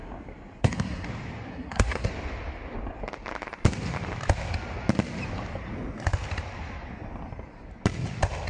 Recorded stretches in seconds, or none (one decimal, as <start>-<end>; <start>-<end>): 0.0-0.6; 1.1-1.5; 2.1-8.5